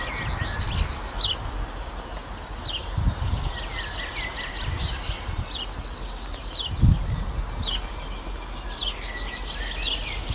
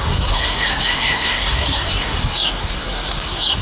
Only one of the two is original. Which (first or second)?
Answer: first